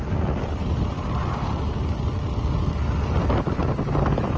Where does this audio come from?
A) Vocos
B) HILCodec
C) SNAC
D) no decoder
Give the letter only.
D